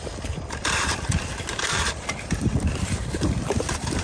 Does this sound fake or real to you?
fake